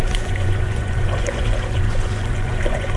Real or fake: fake